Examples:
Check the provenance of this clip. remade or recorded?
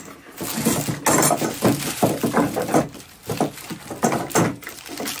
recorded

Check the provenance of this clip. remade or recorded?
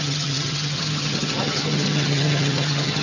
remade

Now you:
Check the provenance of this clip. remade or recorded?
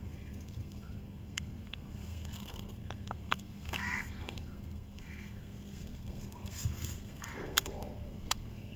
remade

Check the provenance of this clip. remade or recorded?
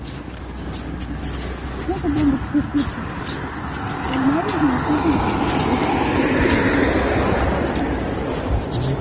recorded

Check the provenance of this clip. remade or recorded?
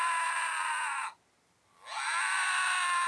recorded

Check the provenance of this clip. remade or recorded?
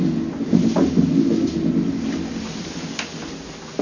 recorded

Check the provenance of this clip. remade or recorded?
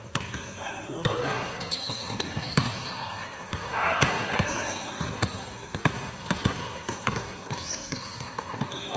remade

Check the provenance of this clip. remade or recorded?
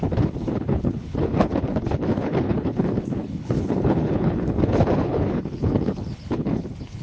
remade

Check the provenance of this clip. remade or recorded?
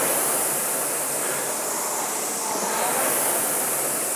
recorded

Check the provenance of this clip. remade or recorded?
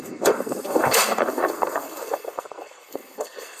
remade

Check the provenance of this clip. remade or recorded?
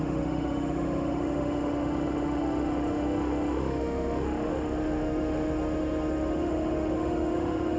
remade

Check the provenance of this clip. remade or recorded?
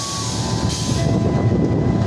recorded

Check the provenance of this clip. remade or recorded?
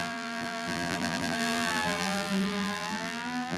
remade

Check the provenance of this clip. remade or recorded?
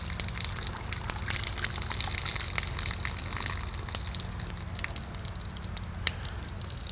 recorded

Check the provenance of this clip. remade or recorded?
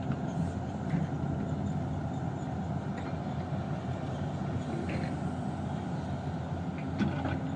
recorded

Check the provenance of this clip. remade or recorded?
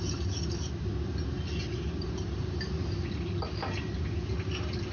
recorded